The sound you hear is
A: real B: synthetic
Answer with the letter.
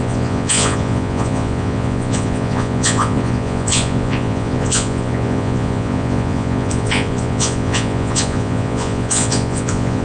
B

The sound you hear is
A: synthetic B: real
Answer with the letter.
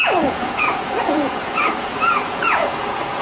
A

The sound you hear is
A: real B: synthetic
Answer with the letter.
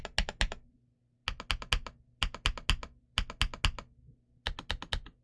A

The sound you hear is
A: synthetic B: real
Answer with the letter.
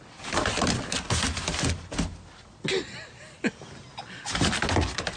B